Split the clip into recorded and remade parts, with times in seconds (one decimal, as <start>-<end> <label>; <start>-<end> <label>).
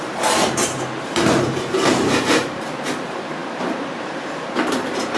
0.0-5.2 remade